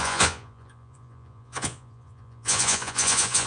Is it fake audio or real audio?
fake